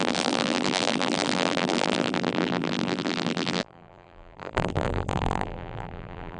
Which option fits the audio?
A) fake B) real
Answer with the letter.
A